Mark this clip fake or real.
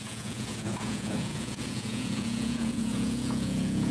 fake